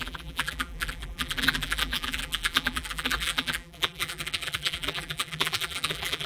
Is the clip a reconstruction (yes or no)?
yes